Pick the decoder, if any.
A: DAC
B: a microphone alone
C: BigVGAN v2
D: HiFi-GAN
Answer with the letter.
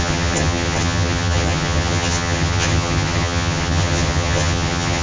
D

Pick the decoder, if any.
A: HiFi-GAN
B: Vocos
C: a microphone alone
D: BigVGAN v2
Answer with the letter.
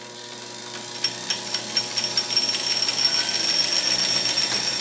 C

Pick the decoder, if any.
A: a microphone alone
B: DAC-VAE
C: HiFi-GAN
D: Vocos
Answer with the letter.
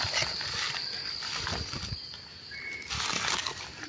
A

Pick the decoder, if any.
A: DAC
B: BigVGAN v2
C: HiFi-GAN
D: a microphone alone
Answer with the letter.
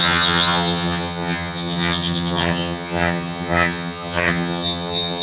C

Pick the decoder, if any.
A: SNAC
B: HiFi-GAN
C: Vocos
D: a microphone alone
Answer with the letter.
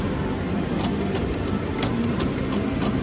D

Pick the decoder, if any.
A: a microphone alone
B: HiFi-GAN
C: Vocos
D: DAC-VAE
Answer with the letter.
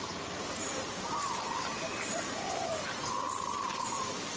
A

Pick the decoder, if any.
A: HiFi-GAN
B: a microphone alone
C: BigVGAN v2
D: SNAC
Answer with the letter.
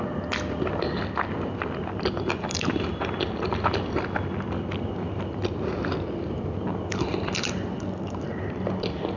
B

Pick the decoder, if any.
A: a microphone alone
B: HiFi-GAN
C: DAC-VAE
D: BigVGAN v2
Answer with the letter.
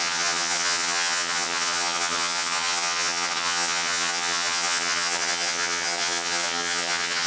B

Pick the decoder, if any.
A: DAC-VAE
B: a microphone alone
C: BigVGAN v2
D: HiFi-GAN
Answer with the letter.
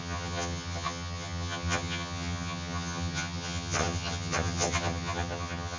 D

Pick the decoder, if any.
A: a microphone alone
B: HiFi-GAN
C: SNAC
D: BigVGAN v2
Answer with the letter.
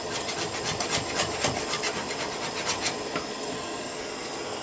A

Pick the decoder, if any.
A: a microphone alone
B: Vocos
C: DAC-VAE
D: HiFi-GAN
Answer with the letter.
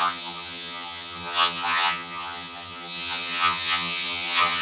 D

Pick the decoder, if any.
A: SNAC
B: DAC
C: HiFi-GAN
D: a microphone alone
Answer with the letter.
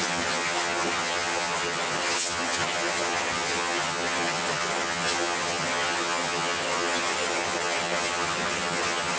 C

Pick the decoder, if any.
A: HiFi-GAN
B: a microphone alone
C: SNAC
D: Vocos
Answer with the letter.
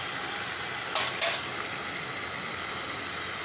B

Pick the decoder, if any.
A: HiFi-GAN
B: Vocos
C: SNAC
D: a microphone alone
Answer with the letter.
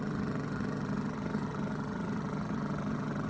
A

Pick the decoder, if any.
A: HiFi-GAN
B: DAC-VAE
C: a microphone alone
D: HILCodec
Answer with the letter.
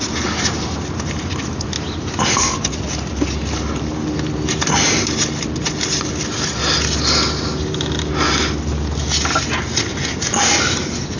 C